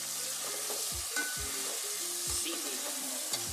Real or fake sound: real